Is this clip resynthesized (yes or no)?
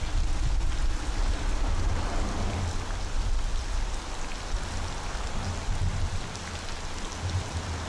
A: no